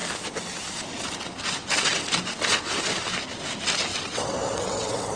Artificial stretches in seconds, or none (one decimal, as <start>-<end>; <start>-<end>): 3.9-5.2